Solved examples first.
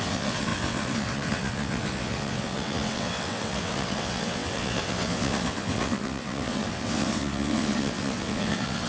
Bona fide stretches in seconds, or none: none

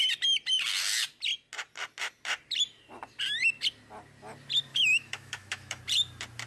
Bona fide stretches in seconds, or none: 0.0-4.7; 5.8-6.5

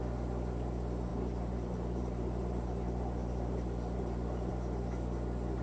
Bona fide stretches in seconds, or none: 0.0-1.1; 4.5-5.6